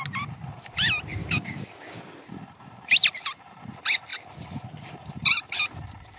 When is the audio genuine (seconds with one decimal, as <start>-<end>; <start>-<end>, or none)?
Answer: 0.0-1.2; 2.0-6.2